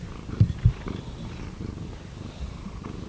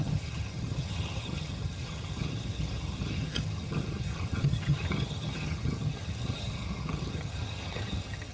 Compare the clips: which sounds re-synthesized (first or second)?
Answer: second